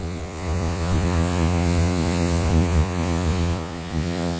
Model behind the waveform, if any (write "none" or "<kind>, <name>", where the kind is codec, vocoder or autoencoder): vocoder, Vocos